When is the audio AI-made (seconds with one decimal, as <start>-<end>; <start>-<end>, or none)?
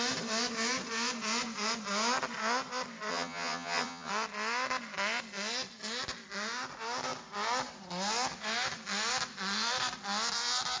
3.1-4.1